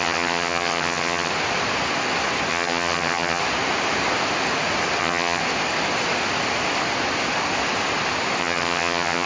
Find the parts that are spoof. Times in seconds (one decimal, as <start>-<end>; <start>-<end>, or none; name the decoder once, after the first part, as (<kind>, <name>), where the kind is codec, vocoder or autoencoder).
0.0-1.3 (vocoder, HiFi-GAN); 2.5-3.4; 5.0-5.4; 8.4-9.3